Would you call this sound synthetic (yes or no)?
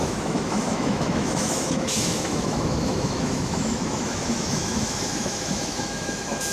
yes